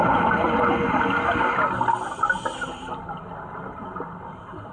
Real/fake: real